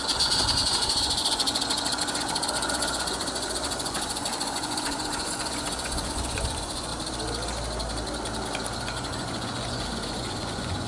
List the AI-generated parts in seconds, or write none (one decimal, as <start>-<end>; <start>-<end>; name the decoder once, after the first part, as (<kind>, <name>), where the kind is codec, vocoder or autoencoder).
0.0-6.9 (vocoder, Vocos); 8.8-10.9